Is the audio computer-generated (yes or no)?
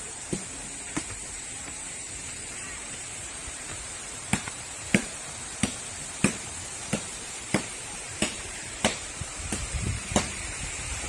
yes